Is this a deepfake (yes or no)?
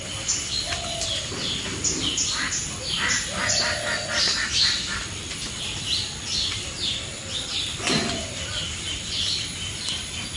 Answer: no